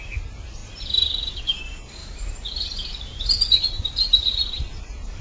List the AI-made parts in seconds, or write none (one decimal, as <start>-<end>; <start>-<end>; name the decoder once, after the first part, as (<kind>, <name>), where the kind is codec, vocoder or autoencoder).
2.0-3.2 (vocoder, BigVGAN v2)